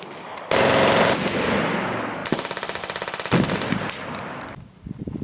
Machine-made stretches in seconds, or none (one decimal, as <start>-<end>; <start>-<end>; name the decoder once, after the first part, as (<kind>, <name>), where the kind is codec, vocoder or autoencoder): 0.0-2.2 (vocoder, BigVGAN v2); 2.8-5.2

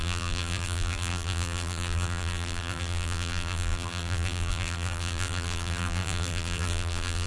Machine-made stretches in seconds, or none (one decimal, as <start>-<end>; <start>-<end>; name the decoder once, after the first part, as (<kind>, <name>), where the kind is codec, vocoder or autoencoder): 0.0-7.3 (vocoder, BigVGAN v2)

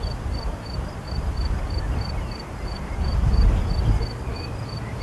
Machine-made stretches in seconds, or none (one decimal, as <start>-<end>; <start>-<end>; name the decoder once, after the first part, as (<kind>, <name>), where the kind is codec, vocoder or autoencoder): 0.5-3.5 (vocoder, BigVGAN v2); 4.3-5.0